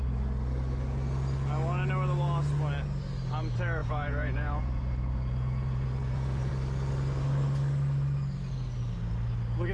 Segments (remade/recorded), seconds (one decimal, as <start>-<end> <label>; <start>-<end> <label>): 0.0-3.8 recorded; 3.8-6.5 remade; 6.5-9.7 recorded